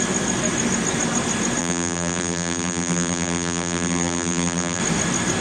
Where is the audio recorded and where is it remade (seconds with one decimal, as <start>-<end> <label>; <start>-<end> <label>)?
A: 0.0-1.6 recorded; 1.6-4.8 remade; 4.8-5.4 recorded